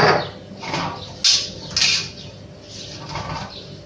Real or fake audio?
real